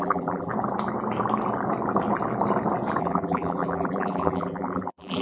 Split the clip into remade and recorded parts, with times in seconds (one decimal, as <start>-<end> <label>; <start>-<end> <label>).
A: 0.0-0.5 remade; 0.5-3.0 recorded; 3.0-5.2 remade